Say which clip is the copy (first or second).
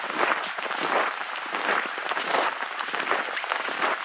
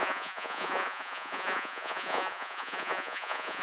second